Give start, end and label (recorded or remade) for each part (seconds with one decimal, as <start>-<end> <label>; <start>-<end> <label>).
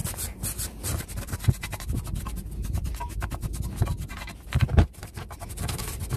0.0-1.1 recorded; 1.1-6.2 remade